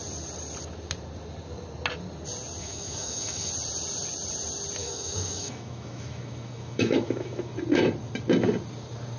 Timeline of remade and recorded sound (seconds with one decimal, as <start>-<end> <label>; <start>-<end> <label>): 0.0-2.6 recorded; 2.6-3.5 remade; 3.5-4.8 recorded; 4.8-7.5 remade; 7.5-9.2 recorded